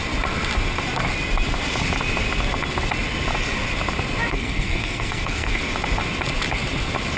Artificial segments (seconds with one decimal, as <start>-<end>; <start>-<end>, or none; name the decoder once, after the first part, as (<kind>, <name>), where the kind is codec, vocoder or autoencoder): 4.3-5.6 (codec, SNAC)